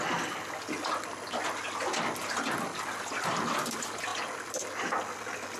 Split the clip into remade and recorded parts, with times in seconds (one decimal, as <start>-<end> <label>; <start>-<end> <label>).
0.0-5.6 recorded